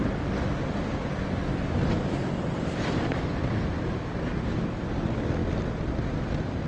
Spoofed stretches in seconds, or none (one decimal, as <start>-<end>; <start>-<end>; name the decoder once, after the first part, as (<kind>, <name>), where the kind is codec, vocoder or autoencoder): none